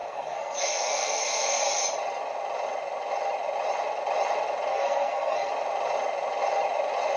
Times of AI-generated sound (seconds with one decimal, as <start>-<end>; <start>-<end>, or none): 0.0-1.6; 4.7-5.5

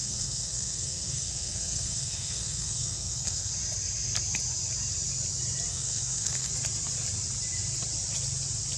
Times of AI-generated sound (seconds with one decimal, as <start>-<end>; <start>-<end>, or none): 0.0-3.5; 5.7-6.5

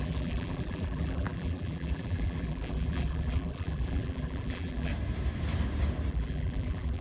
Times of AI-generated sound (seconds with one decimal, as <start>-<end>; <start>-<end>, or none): 0.0-4.9; 6.1-7.0

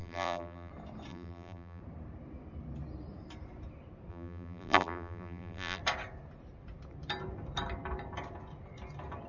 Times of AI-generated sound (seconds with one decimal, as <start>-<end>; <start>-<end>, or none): 0.0-0.7; 1.1-1.8; 4.1-5.8

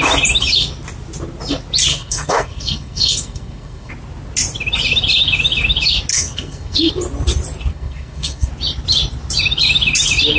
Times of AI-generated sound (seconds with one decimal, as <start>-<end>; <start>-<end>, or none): 1.9-3.9; 6.1-6.9; 7.7-8.5